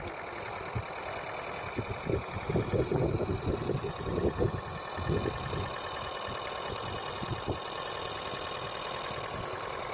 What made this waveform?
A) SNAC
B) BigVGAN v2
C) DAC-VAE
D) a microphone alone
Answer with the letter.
D